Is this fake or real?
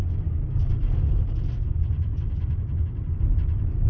real